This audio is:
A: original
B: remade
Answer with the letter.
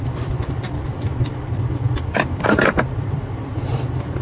B